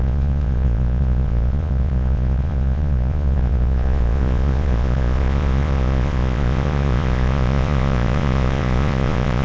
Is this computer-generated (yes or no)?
yes